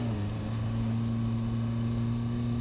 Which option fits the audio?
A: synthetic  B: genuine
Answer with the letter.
B